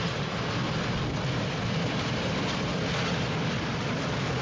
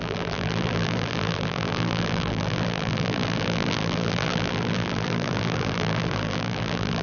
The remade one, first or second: second